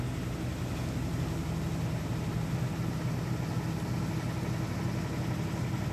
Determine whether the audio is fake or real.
real